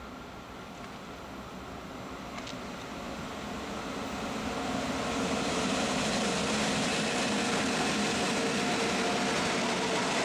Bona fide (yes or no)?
yes